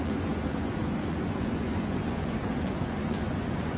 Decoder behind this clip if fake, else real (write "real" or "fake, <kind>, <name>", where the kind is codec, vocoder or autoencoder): fake, vocoder, Vocos